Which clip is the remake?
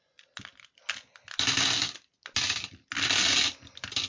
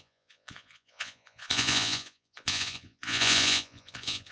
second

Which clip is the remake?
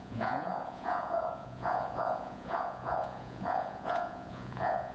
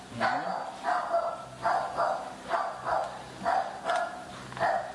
first